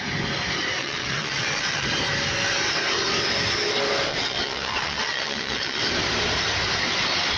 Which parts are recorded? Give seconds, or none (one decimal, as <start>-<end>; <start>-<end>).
0.0-0.8; 1.9-4.1; 5.8-7.4

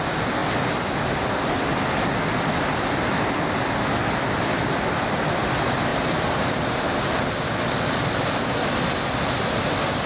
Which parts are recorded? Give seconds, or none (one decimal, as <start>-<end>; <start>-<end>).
0.0-5.9; 7.2-10.1

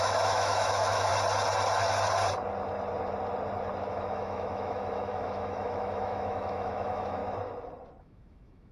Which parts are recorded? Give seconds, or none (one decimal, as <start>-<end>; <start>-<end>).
1.1-3.9; 7.2-8.0

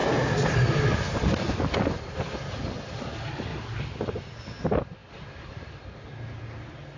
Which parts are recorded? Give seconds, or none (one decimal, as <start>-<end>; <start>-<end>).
0.0-7.0

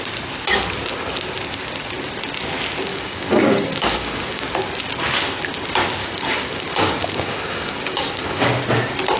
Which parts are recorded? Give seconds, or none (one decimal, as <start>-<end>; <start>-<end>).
0.0-2.9; 4.5-6.0; 8.6-9.2